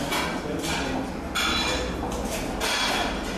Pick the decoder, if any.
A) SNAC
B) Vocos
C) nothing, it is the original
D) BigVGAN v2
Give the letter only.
C